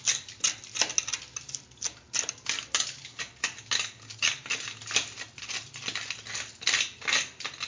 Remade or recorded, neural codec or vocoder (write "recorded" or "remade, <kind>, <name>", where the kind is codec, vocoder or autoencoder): recorded